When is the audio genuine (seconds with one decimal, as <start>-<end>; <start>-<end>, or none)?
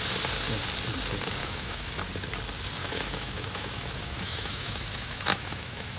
0.0-1.4; 2.0-2.8